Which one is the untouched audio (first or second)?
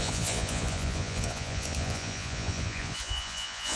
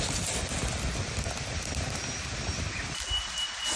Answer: second